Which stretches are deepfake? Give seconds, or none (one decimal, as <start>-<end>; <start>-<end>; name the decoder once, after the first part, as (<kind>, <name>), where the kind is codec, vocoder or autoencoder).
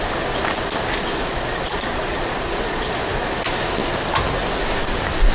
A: 1.1-2.9 (vocoder, Vocos)